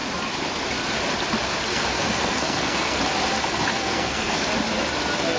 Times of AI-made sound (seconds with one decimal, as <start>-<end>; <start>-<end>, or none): 1.7-3.0; 3.7-4.4